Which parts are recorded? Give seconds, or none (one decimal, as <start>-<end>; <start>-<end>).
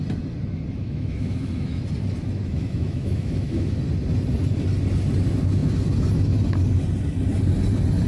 0.0-0.8; 1.8-2.4; 3.8-8.1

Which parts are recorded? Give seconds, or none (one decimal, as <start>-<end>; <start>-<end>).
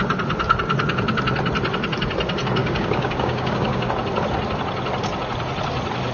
0.0-2.6; 3.9-6.1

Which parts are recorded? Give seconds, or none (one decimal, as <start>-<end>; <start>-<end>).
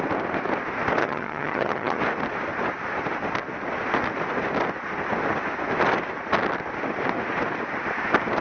0.0-1.0; 2.0-8.4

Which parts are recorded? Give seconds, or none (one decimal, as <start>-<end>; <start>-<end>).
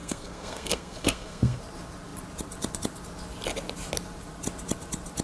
1.6-5.2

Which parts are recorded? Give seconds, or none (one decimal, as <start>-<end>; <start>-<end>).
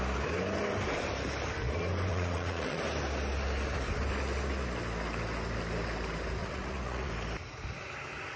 0.0-2.1; 2.8-6.4; 7.1-8.4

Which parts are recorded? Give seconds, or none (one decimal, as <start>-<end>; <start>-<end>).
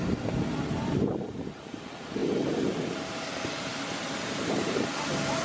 0.0-5.4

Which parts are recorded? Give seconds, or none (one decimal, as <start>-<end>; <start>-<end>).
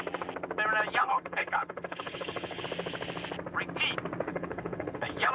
0.0-1.0; 2.6-4.3